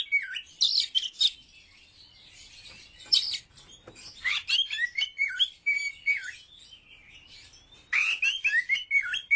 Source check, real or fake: real